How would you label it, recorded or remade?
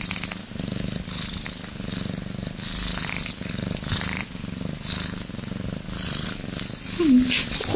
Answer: recorded